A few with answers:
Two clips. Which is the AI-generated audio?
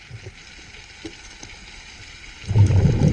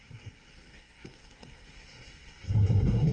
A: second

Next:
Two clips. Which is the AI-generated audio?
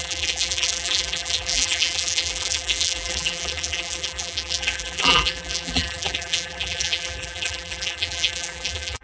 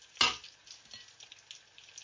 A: first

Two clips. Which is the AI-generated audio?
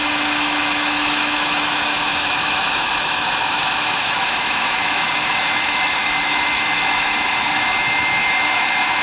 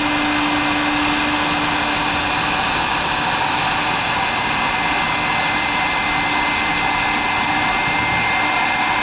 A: first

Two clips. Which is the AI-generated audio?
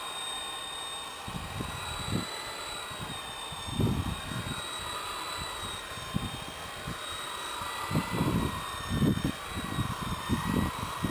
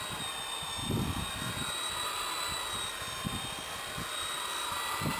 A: first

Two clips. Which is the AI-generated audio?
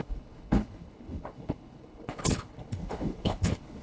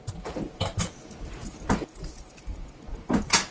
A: first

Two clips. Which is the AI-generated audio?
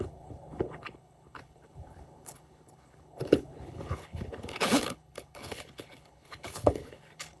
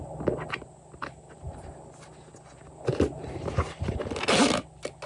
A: first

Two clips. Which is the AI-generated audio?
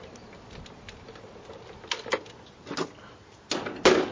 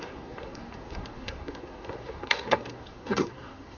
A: second